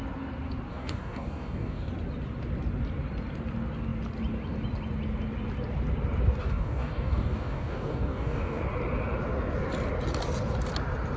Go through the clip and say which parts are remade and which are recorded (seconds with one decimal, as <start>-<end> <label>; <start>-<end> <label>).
0.0-0.7 recorded; 0.7-1.9 remade; 1.9-6.4 recorded; 6.4-8.6 remade; 8.6-11.2 recorded